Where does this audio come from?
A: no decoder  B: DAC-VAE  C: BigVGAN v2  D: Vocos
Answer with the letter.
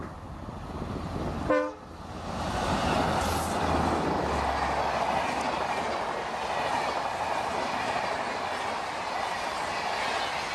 A